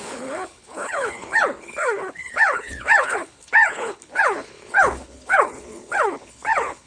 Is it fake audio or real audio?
fake